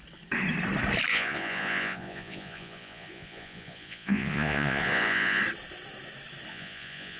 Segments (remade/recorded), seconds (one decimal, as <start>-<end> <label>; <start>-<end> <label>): 0.0-1.1 recorded; 1.1-5.4 remade; 5.4-6.5 recorded; 6.5-7.2 remade

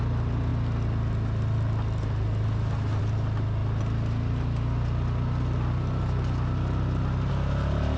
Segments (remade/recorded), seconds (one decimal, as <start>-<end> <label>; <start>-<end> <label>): 0.0-8.0 recorded

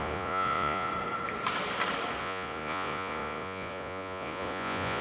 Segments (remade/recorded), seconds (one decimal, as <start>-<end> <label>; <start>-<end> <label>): 0.0-0.9 remade; 0.9-2.2 recorded; 2.2-5.0 remade

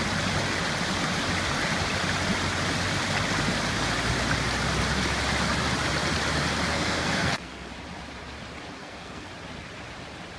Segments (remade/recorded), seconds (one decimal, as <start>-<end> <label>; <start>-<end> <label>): 0.0-6.7 recorded; 6.7-7.7 remade; 7.7-8.8 recorded; 8.8-9.3 remade; 9.3-10.4 recorded

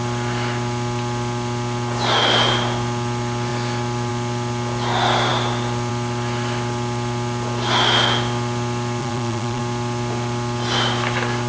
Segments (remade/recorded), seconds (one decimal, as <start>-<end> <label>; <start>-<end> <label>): 0.0-9.0 recorded; 9.0-9.6 remade; 9.6-11.5 recorded

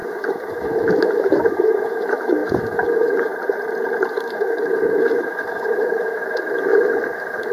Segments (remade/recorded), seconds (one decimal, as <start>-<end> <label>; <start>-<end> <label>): 0.0-3.3 remade; 3.3-4.1 recorded; 4.1-7.5 remade